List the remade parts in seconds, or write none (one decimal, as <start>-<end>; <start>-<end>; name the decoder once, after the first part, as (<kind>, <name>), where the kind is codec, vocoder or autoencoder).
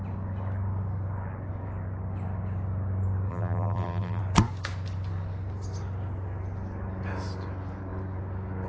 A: 3.3-4.2 (vocoder, BigVGAN v2)